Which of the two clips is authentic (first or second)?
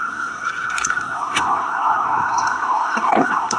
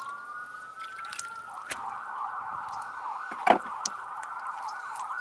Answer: second